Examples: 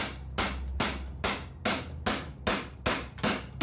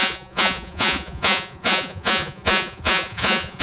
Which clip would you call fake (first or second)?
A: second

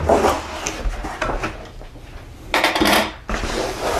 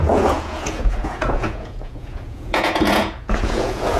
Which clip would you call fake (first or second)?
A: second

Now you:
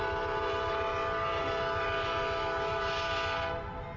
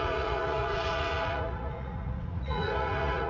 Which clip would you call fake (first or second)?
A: second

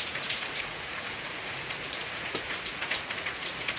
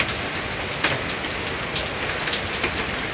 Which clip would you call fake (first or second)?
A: first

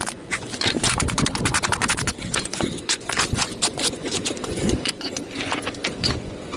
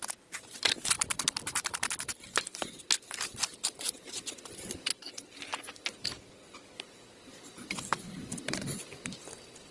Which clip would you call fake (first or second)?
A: first